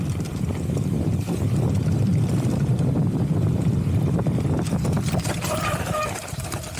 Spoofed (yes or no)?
yes